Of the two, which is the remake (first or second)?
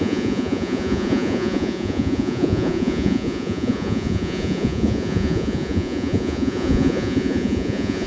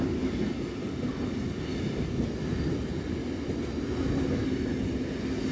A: first